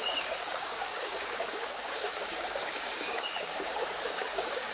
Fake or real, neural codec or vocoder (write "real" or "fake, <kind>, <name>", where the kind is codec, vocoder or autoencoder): fake, codec, DAC